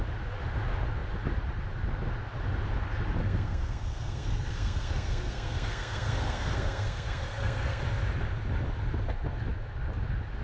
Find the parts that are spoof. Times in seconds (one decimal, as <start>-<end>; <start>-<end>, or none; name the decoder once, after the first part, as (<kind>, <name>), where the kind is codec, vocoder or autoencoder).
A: 3.2-7.8 (codec, SNAC)